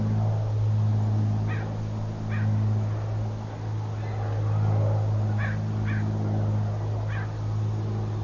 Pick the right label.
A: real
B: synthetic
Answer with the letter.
A